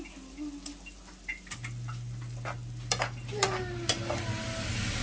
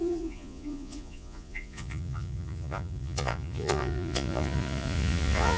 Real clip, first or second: first